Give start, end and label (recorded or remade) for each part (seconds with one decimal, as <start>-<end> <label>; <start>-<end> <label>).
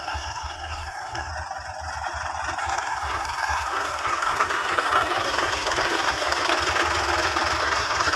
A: 0.0-1.3 remade; 1.3-2.6 recorded; 2.6-6.5 remade; 6.5-7.6 recorded; 7.6-8.2 remade